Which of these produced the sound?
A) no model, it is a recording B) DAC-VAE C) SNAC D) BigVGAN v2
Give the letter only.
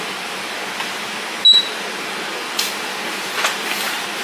A